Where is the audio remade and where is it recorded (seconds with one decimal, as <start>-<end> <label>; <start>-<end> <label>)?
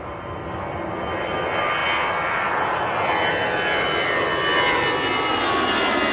0.0-6.1 recorded